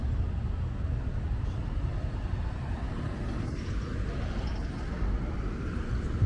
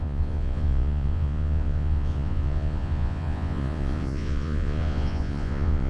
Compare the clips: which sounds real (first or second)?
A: first